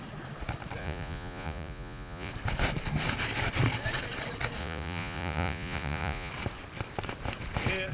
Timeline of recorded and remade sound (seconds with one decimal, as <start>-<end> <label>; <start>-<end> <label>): 0.0-0.8 recorded; 0.8-2.3 remade; 2.3-4.6 recorded; 4.6-6.3 remade; 6.3-7.9 recorded